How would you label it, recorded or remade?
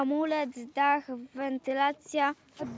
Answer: recorded